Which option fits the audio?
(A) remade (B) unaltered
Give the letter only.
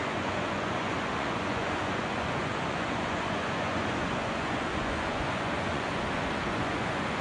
A